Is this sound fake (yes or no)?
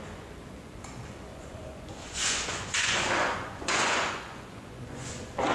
yes